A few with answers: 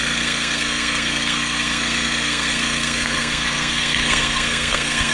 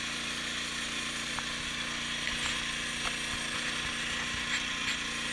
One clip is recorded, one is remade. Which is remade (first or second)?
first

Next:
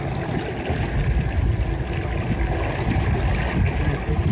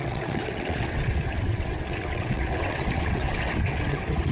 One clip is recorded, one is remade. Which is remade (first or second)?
second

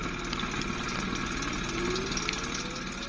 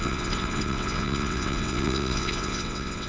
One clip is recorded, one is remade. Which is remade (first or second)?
second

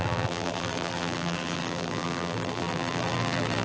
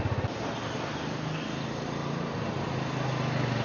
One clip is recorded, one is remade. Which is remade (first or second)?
first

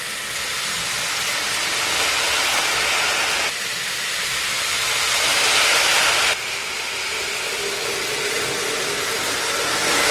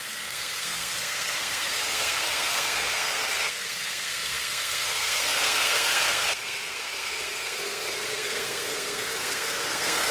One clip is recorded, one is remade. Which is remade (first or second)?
second